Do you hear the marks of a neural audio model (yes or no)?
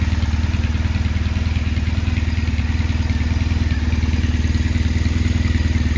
no